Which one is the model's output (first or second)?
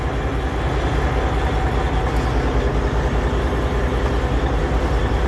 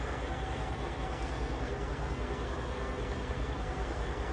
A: second